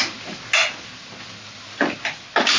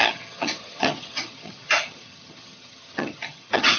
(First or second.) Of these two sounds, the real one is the first